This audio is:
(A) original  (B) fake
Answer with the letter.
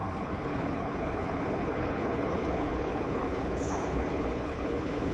B